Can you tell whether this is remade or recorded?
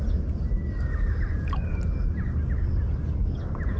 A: recorded